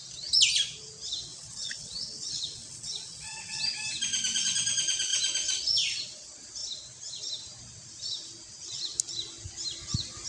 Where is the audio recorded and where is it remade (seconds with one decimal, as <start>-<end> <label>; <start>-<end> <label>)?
0.0-1.3 recorded; 1.3-3.6 remade; 3.6-10.3 recorded